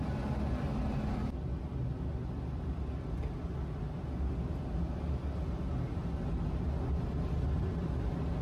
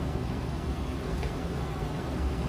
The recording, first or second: first